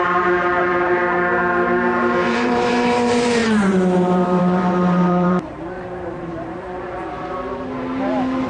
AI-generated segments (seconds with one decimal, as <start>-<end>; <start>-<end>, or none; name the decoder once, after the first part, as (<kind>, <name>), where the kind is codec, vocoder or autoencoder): 0.0-0.7 (vocoder, BigVGAN v2); 2.3-8.5